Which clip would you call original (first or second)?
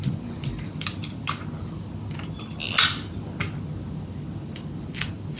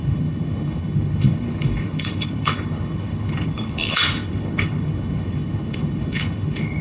first